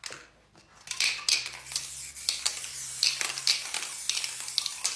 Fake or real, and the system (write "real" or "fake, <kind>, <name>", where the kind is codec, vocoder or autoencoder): real